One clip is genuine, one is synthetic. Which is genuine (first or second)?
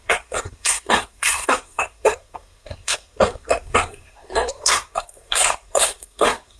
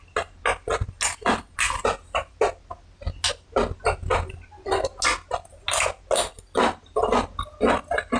second